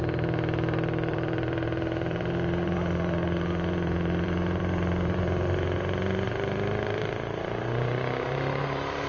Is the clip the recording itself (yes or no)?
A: no